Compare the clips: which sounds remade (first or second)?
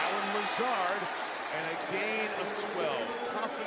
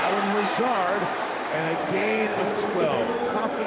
second